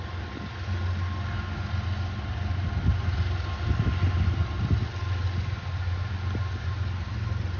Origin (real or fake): real